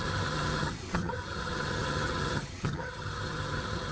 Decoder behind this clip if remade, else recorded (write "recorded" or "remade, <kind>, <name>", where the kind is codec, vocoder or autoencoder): remade, vocoder, HiFi-GAN